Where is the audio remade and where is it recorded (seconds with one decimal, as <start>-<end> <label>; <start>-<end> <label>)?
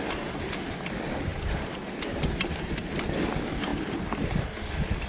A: 0.0-5.1 recorded